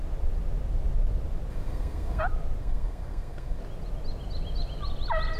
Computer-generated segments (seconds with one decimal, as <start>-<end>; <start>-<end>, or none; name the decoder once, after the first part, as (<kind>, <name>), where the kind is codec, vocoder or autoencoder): 1.5-2.2 (codec, SNAC); 2.6-3.6